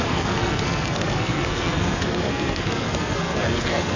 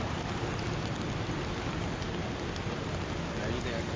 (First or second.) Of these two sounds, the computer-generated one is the first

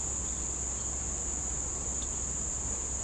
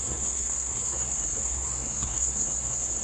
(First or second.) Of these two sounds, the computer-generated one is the second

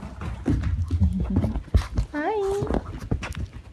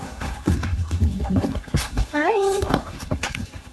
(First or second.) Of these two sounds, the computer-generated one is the second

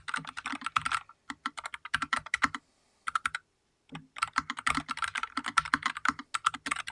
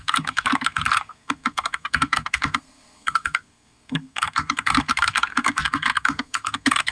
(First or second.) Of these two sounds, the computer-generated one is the second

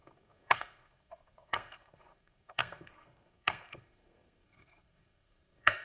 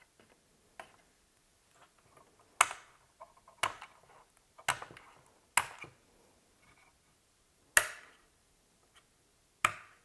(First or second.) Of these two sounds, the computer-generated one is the first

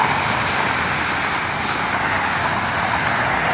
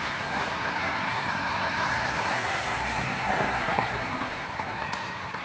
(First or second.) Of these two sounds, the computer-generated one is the second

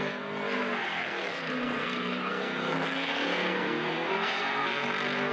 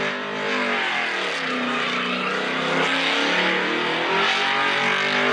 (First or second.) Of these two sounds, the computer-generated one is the first